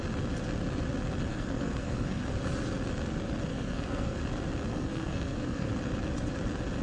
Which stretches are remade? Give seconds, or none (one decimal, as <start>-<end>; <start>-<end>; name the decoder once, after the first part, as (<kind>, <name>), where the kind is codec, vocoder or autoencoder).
1.3-2.2 (codec, SNAC); 3.5-4.2; 4.7-5.7